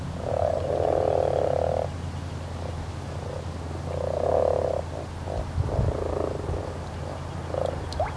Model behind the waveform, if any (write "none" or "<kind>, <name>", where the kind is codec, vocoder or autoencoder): none